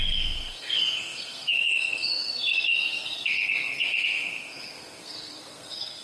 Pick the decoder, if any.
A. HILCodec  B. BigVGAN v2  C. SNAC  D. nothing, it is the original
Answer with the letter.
C